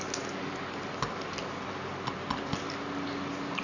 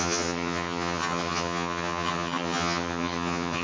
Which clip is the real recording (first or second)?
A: first